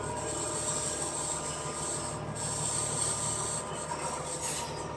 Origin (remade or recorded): remade